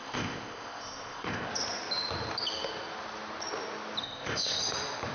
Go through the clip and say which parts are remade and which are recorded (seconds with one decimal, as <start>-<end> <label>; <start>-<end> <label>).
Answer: 0.0-1.5 remade; 1.5-4.0 recorded; 4.0-4.6 remade; 4.6-5.1 recorded